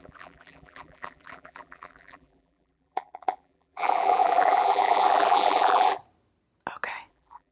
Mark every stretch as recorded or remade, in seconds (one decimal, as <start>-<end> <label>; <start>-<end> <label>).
0.0-6.0 remade; 6.0-7.1 recorded; 7.1-7.5 remade

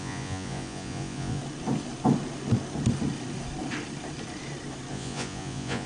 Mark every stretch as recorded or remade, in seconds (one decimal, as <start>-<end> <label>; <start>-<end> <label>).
0.0-1.4 remade; 1.4-4.9 recorded; 4.9-5.9 remade

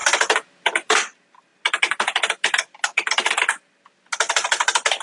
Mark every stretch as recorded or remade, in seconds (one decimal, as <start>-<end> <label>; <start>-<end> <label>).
0.0-5.0 recorded

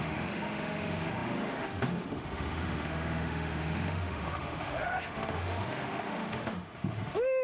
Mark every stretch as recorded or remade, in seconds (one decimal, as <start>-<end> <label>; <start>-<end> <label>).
0.0-7.4 remade

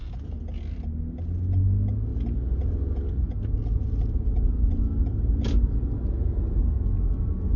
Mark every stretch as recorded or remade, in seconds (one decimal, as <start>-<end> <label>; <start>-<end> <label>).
0.0-7.6 recorded

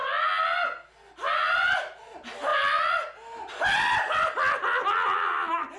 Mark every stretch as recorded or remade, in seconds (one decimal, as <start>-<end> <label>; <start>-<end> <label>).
0.0-5.8 recorded